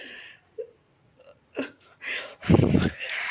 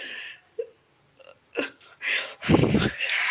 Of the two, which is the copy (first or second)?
first